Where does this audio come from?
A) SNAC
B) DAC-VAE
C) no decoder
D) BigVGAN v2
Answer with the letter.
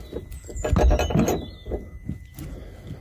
C